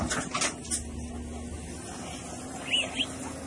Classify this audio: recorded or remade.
recorded